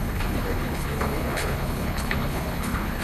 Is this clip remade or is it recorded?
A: remade